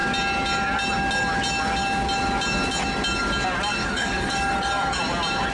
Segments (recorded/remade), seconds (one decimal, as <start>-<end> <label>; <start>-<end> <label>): 0.0-3.8 recorded; 3.8-5.0 remade; 5.0-5.5 recorded